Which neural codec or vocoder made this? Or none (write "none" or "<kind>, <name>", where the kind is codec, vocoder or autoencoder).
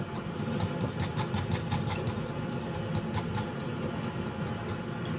none